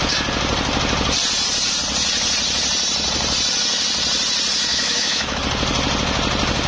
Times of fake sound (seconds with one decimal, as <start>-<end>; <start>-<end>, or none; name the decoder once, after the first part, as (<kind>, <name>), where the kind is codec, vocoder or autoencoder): 4.7-5.4 (autoencoder, DAC-VAE)